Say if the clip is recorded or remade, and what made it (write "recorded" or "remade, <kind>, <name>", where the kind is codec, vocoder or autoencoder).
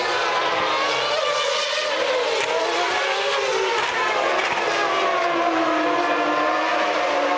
recorded